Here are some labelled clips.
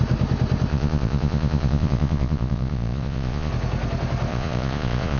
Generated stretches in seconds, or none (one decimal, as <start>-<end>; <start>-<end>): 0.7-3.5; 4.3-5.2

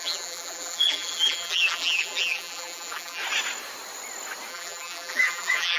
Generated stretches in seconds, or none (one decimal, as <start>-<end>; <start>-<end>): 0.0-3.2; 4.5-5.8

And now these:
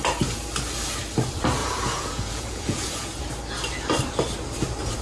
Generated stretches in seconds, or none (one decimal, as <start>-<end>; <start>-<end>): 1.6-3.2

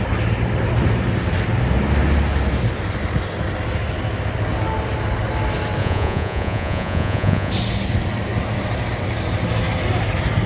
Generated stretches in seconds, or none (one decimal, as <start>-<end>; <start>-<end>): 5.8-7.5

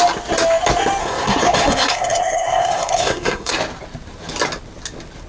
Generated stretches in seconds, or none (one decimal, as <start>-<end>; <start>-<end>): 1.0-3.5

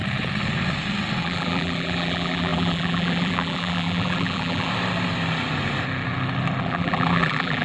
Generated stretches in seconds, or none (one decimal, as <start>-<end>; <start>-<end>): 1.2-4.7; 6.6-7.6